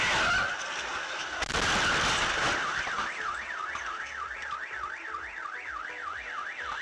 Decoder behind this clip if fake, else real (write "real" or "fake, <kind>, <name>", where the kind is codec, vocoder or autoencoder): real